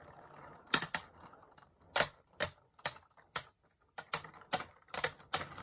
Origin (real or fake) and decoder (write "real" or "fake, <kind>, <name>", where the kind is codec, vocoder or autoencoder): real